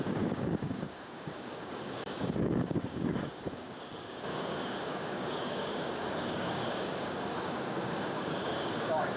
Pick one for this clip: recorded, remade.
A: remade